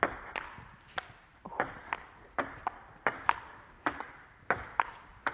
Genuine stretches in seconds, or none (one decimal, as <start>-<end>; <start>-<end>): 0.0-5.3